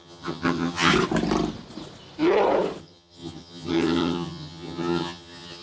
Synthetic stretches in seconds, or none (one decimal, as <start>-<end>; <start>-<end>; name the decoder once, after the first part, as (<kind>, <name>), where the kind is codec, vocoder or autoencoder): 0.0-0.9 (vocoder, HiFi-GAN); 2.8-5.6